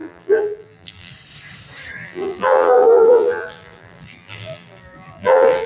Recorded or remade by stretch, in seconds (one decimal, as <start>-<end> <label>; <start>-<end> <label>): 0.0-1.1 remade; 1.1-2.0 recorded; 2.0-5.7 remade